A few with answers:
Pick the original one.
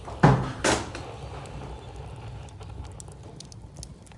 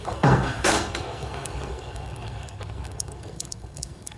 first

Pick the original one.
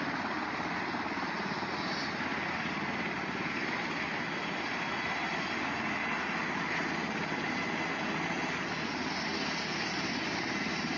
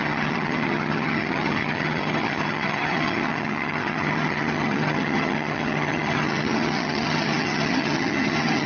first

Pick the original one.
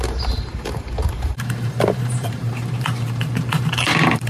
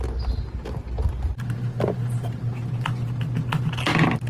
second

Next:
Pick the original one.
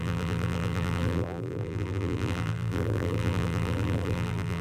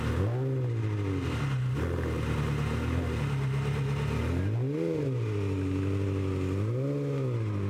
second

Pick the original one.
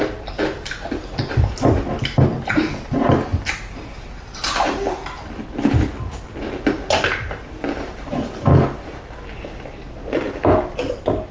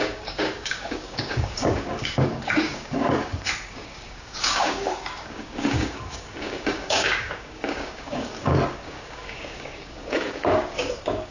first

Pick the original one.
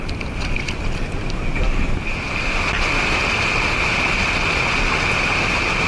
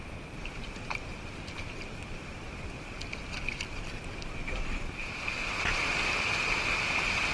first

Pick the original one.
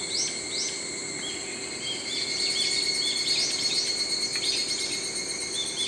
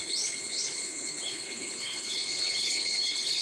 first